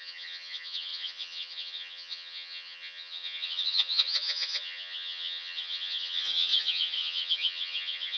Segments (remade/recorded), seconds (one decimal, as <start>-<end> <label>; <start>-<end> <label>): 0.0-8.2 remade